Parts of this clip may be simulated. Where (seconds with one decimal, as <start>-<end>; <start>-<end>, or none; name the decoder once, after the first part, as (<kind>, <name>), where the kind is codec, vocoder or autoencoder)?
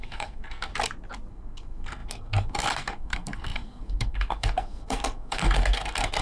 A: 0.0-0.7 (codec, SNAC); 1.3-6.2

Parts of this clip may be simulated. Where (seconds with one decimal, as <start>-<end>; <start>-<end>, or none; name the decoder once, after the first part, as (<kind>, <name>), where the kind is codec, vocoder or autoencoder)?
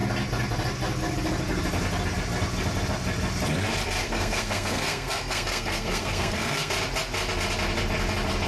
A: 4.0-6.7 (codec, SNAC)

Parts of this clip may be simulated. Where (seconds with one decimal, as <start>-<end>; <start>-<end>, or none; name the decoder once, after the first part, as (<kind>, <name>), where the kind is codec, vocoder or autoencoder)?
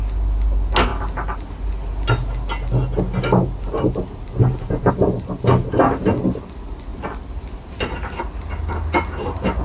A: none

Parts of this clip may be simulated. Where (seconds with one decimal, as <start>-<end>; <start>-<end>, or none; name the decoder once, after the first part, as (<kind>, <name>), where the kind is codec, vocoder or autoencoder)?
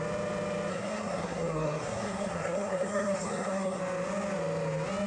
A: 0.7-3.8 (codec, SNAC)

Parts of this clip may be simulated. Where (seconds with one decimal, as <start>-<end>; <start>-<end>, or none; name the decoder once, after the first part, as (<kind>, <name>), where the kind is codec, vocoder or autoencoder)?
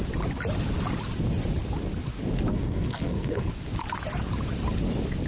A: 2.5-3.5 (codec, SNAC)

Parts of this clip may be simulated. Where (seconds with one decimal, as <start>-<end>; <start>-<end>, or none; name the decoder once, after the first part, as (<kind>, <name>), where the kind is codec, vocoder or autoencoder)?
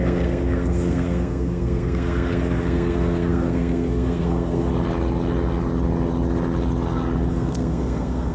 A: 0.0-4.7 (codec, SNAC); 7.3-8.3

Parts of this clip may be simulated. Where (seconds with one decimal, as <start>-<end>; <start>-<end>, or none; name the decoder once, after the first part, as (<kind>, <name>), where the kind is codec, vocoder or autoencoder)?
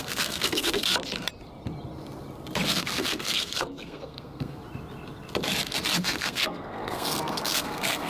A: 0.0-0.9 (codec, SNAC); 2.7-4.6; 6.0-8.1